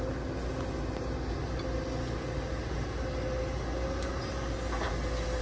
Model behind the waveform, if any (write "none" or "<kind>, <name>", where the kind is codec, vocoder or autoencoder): none